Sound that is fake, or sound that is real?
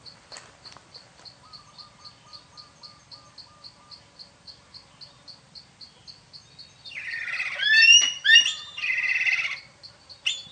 real